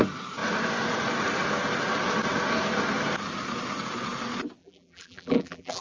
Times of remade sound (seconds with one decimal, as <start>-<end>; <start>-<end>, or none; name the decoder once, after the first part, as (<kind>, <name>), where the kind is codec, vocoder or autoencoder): 4.6-5.8 (vocoder, BigVGAN v2)

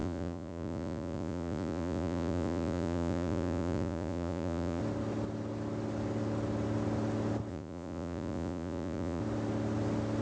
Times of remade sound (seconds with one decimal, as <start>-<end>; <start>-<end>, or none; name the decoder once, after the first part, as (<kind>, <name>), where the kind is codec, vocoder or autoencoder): 0.0-4.8 (vocoder, Vocos); 7.5-9.2

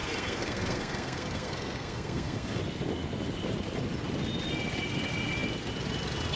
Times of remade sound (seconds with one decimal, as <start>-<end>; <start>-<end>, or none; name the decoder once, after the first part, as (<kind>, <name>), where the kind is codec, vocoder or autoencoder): 0.0-2.6 (codec, SNAC)

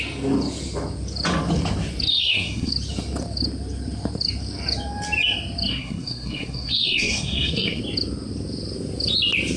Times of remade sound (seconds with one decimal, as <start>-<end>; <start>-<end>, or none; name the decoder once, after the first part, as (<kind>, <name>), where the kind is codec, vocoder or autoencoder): 2.1-2.7 (codec, SNAC); 5.7-7.8

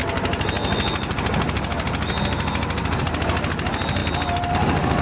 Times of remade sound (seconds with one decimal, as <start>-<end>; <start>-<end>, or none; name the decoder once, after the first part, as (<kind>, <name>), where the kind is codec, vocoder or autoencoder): none

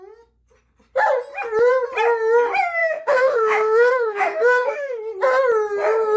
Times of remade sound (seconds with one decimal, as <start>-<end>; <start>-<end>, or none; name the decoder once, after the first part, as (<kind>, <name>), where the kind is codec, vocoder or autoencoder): 2.8-5.0 (autoencoder, DAC-VAE)

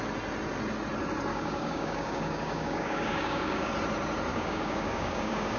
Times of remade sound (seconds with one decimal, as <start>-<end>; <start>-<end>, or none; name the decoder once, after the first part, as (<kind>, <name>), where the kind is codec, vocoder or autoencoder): 1.3-3.7 (codec, DAC); 4.3-5.6

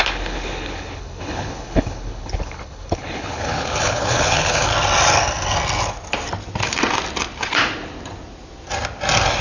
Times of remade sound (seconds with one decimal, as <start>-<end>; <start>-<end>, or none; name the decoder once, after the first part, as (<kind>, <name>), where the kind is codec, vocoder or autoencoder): 0.0-4.7 (codec, HILCodec)